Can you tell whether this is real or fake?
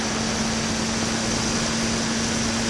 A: real